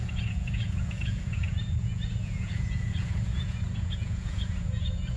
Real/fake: fake